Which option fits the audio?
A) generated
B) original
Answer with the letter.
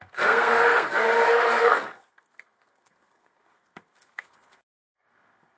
A